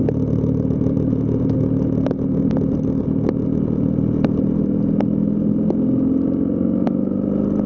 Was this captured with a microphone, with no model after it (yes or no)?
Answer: yes